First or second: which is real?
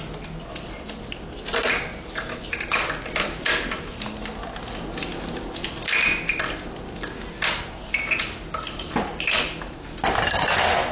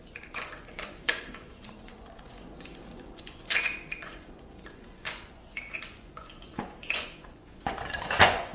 first